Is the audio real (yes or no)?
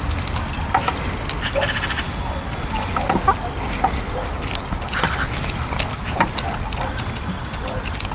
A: yes